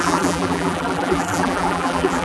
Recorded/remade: remade